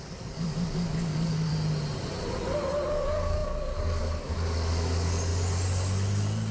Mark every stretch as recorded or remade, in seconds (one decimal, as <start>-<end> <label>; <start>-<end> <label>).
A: 0.0-1.5 remade; 1.5-2.9 recorded; 2.9-5.3 remade; 5.3-6.5 recorded